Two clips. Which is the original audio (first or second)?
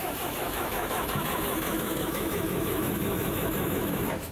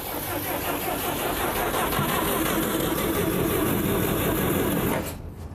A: second